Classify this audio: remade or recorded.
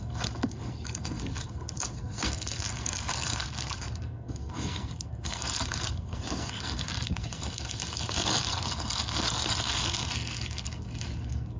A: remade